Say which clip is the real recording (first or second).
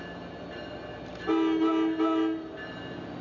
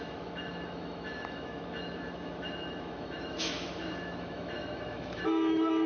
first